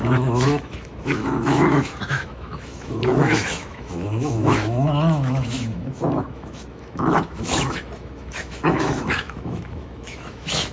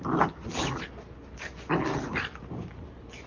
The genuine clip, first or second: second